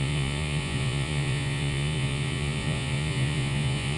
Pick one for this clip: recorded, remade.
remade